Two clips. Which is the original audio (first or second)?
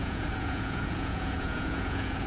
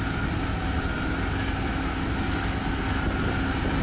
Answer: second